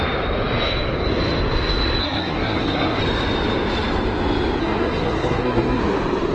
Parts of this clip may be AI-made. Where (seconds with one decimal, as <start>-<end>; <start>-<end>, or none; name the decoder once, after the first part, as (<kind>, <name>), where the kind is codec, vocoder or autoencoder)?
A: 2.0-3.0 (codec, SNAC); 4.6-5.8